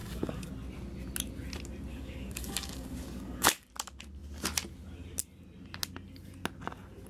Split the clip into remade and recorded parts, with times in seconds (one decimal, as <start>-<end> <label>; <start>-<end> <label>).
0.0-0.5 remade; 0.5-1.9 recorded; 1.9-3.7 remade; 3.7-7.1 recorded